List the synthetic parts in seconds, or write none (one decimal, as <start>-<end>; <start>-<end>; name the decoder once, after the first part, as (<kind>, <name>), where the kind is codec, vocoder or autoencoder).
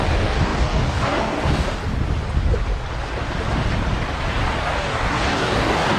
0.0-1.8 (codec, DAC); 4.6-6.0